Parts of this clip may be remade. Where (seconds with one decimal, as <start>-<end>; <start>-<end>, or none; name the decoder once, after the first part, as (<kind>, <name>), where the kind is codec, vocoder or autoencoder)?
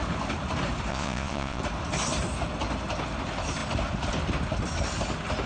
0.9-1.6 (vocoder, Vocos)